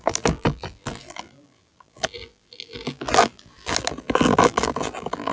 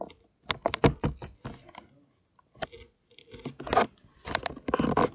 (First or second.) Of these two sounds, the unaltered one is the second